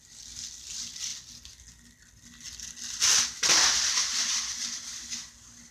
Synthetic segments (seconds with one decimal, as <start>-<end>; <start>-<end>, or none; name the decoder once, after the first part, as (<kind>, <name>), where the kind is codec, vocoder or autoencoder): none